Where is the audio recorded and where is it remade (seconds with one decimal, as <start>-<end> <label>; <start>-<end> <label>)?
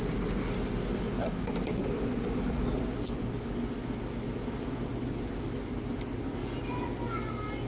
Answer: 0.0-7.7 recorded